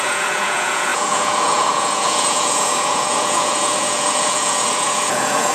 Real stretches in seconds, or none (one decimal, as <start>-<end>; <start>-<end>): none